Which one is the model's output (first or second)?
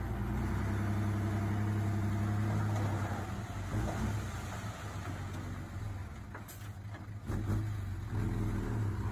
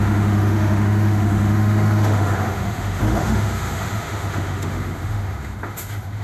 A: second